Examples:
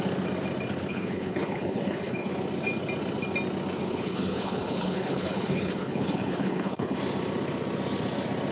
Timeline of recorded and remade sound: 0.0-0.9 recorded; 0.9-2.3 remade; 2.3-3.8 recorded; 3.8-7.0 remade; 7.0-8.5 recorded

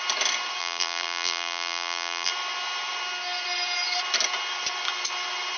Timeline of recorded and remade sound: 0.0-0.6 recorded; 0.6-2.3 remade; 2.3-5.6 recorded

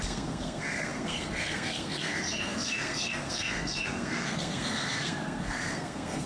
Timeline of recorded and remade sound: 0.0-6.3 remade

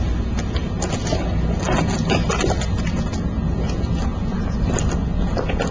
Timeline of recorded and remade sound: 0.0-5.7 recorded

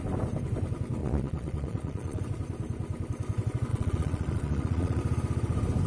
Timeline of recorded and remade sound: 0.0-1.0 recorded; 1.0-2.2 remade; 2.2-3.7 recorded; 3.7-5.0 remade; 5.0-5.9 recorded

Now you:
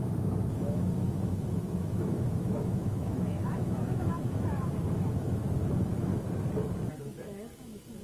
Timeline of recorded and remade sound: 0.0-6.1 remade; 6.1-7.0 recorded; 7.0-8.0 remade